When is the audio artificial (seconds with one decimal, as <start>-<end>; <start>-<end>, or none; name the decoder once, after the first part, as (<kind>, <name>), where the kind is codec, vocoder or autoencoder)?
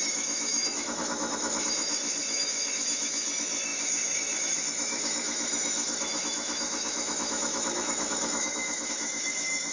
0.0-9.7 (autoencoder, DAC-VAE)